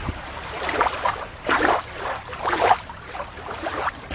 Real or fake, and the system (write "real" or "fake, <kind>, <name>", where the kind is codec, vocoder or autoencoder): fake, vocoder, BigVGAN v2